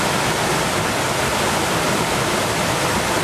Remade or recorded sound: recorded